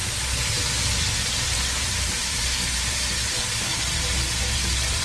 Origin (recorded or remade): remade